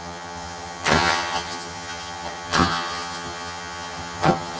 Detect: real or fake fake